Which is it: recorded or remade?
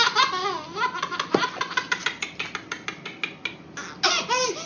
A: recorded